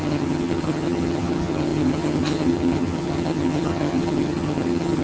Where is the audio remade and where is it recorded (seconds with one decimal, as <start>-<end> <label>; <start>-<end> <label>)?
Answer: 0.0-5.0 remade